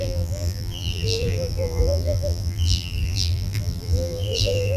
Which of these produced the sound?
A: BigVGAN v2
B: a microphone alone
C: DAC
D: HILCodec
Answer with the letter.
A